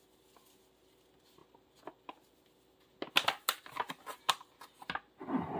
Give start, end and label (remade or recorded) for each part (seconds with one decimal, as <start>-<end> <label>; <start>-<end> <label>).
0.0-5.6 recorded